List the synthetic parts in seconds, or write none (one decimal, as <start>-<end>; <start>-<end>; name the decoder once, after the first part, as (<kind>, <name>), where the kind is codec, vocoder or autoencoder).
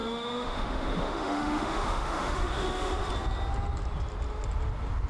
0.0-3.1 (autoencoder, DAC-VAE)